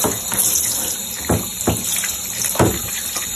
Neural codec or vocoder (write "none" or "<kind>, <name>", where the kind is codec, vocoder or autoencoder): none